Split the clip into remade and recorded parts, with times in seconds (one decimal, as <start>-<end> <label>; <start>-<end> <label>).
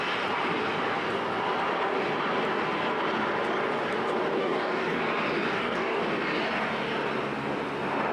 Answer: 0.0-4.4 recorded; 4.4-5.0 remade; 5.0-5.5 recorded; 5.5-6.0 remade; 6.0-8.1 recorded